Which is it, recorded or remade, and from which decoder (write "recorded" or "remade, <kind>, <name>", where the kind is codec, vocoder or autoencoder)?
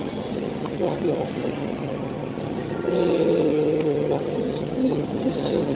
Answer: remade, vocoder, HiFi-GAN